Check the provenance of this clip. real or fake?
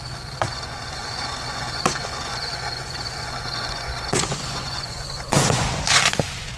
fake